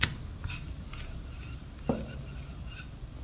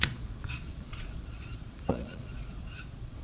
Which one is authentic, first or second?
first